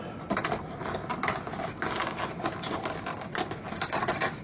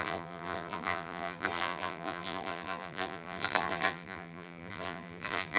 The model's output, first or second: second